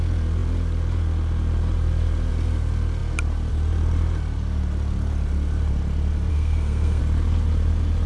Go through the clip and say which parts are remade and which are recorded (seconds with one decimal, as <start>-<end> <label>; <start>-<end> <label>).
0.0-6.3 recorded; 6.3-7.0 remade; 7.0-8.1 recorded